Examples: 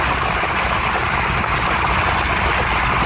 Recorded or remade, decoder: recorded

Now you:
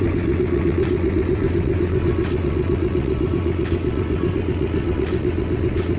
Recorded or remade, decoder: remade, vocoder, WaveNeXt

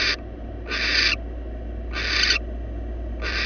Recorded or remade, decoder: recorded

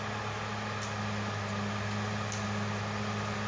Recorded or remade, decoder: recorded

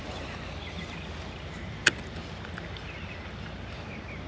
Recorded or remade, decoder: recorded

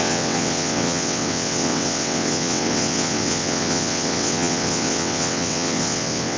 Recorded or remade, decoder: remade, vocoder, WaveNeXt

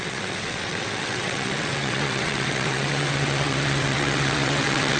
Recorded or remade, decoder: remade, vocoder, WaveNeXt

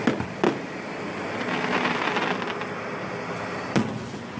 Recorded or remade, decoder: recorded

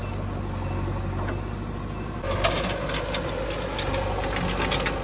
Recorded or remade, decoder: recorded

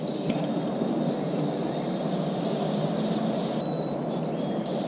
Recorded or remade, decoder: recorded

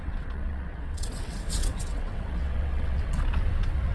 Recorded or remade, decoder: remade, vocoder, WaveNeXt